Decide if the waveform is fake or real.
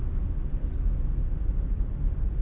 real